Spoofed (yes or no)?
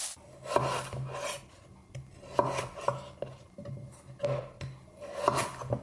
no